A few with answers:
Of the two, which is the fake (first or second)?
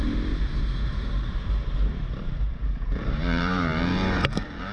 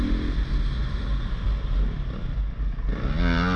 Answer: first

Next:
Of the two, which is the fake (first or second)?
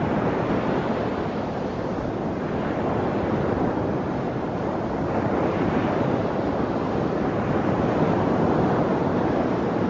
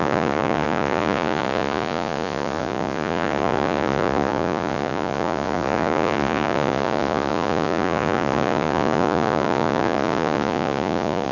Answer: second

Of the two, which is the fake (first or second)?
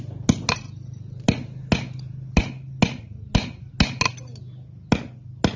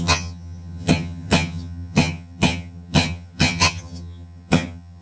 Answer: second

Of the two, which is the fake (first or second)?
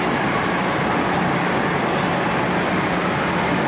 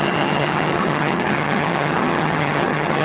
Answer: second